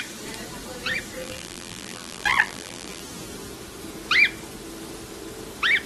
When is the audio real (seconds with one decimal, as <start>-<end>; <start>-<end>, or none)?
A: 0.0-1.2; 3.0-5.9